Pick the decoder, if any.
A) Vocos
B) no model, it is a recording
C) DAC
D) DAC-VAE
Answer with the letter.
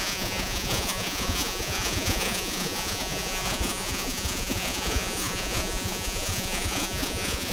A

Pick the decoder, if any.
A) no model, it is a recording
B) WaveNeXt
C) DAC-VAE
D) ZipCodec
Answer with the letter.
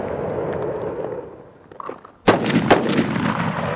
A